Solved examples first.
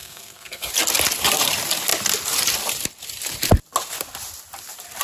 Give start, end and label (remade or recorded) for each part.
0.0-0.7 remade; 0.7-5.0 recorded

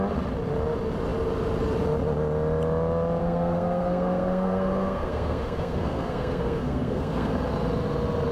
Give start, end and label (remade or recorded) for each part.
0.0-3.2 recorded; 3.2-7.3 remade; 7.3-8.3 recorded